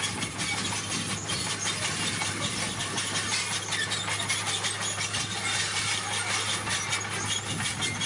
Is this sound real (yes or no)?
yes